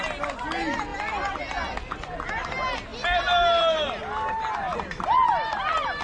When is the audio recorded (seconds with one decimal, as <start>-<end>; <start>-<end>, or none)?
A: 0.0-2.9